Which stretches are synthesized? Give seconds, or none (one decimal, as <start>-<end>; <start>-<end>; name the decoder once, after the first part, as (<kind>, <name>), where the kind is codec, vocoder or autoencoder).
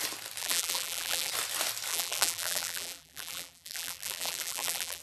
0.4-1.3 (vocoder, BigVGAN v2); 1.9-5.0